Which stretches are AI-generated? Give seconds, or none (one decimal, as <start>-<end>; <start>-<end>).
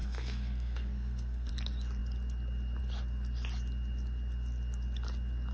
0.0-1.5